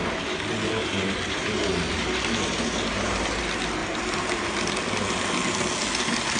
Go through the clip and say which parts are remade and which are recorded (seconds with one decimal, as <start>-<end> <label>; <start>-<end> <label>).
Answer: 0.0-2.7 recorded; 2.7-3.4 remade; 3.4-3.8 recorded; 3.8-4.4 remade; 4.4-6.4 recorded